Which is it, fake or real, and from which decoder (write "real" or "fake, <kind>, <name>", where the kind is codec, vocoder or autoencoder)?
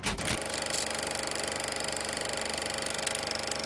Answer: real